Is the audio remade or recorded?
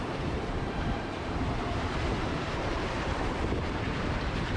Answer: remade